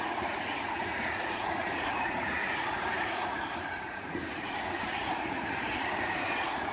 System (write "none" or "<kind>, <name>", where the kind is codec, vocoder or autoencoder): vocoder, Vocos